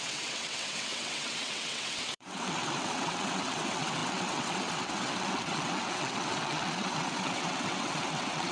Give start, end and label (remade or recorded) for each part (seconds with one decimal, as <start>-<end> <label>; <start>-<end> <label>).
0.0-8.5 remade